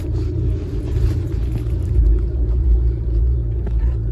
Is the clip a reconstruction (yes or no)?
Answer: yes